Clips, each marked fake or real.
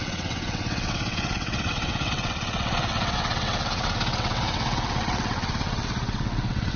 fake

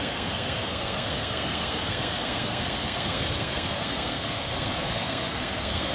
fake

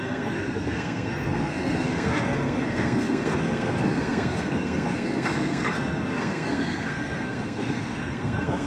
fake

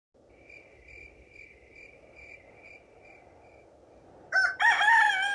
real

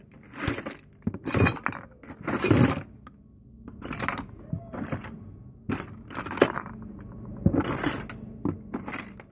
real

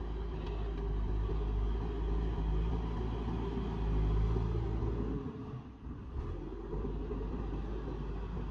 real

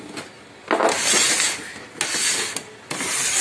real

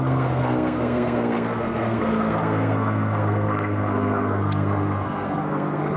fake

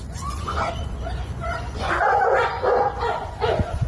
fake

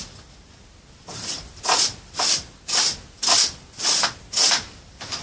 real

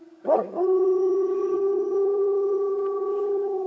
fake